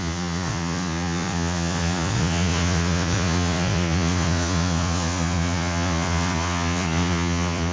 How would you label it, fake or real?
fake